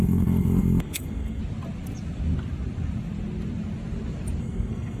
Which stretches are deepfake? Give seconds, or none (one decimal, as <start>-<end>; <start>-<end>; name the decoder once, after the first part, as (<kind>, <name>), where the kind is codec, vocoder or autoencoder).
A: 0.0-1.4 (codec, SNAC); 4.4-5.0